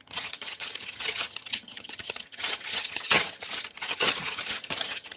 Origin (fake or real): fake